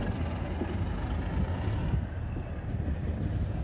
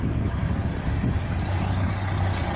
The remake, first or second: second